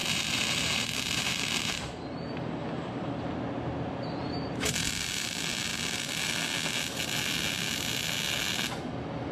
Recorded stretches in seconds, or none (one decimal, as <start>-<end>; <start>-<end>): 1.7-2.6; 3.1-4.2; 4.9-9.3